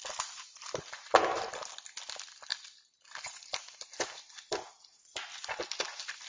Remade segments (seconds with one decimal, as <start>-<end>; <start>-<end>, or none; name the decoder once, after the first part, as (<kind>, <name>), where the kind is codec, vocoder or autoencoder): none